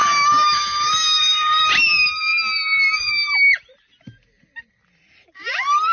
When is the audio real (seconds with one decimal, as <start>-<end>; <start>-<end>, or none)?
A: 1.2-5.9